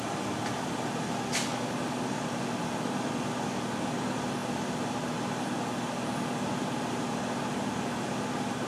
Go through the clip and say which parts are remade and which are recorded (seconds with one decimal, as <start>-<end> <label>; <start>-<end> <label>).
0.0-8.7 recorded